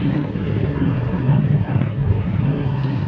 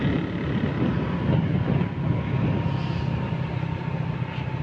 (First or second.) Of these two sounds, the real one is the second